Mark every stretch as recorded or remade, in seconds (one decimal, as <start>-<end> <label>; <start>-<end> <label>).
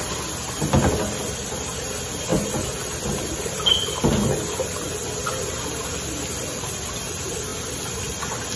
0.0-8.6 recorded